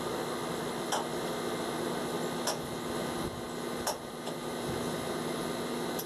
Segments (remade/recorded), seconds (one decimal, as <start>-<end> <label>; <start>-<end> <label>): 0.0-6.1 recorded

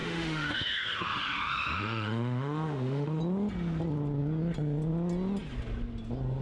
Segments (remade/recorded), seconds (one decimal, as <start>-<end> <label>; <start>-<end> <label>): 0.0-3.2 remade; 3.2-6.4 recorded